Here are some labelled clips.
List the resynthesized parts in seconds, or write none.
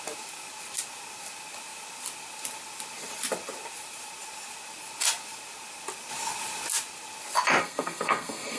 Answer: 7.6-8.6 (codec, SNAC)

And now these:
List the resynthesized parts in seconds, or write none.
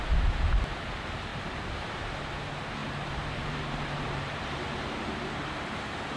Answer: 1.3-2.1 (vocoder, BigVGAN v2); 2.8-4.2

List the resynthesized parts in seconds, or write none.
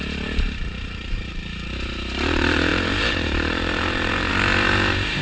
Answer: 0.0-5.2 (vocoder, BigVGAN v2)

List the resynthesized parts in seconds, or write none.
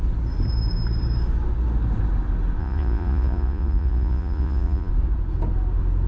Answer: 2.6-4.9 (vocoder, Vocos)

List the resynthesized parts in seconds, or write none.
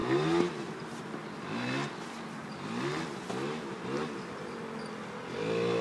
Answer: none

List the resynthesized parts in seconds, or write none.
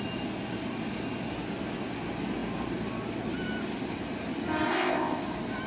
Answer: 4.7-5.2 (codec, ZipCodec)